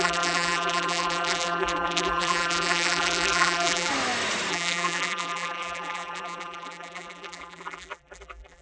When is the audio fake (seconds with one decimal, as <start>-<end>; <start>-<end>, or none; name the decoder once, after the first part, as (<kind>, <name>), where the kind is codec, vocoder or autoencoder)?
0.0-3.9 (vocoder, BigVGAN v2); 4.5-8.6

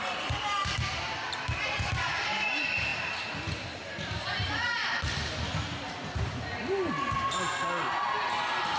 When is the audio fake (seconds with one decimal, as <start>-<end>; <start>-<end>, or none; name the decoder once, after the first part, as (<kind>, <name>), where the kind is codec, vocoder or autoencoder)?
none

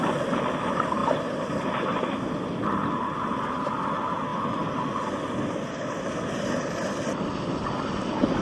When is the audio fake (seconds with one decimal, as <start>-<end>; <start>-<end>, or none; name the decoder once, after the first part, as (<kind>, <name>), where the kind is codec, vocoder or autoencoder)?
none

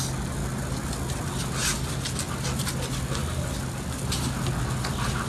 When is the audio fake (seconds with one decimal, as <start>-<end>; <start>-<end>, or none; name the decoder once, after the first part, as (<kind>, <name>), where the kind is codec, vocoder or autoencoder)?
none

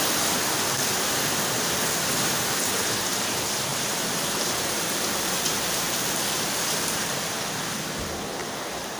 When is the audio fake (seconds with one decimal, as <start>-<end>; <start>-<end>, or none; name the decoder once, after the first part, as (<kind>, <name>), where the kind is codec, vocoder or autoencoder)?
3.7-7.6 (vocoder, BigVGAN v2); 8.4-9.0